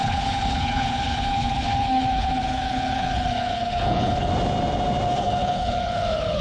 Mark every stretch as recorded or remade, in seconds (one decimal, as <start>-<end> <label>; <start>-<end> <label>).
0.0-4.3 remade; 4.3-5.1 recorded; 5.1-6.4 remade